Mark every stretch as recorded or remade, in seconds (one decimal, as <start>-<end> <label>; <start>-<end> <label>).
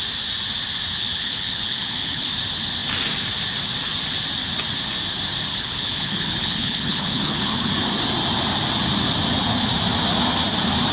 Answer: 0.0-1.0 recorded; 1.0-2.3 remade; 2.3-5.5 recorded; 5.5-7.7 remade; 7.7-10.9 recorded